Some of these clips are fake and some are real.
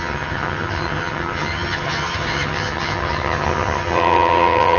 fake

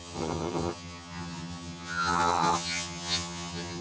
fake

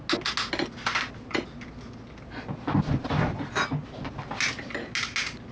real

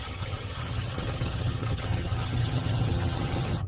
fake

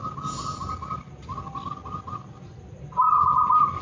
real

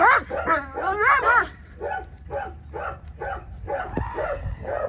real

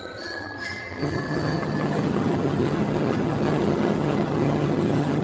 fake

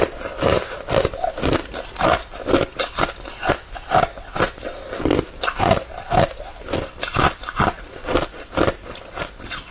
real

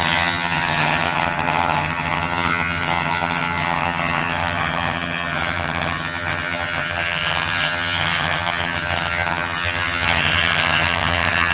fake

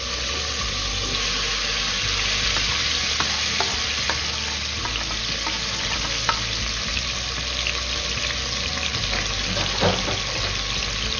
real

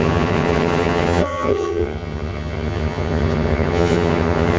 fake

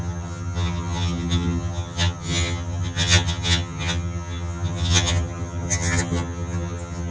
fake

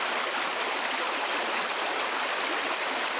real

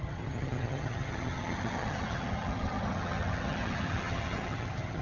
fake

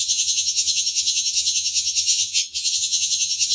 fake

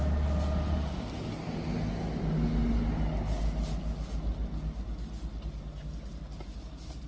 real